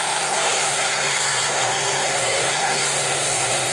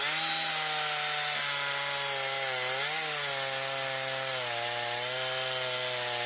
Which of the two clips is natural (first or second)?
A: second